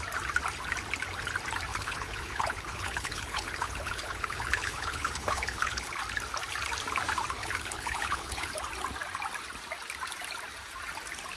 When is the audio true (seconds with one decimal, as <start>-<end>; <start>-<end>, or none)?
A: 0.0-1.7; 6.0-7.4; 8.5-11.4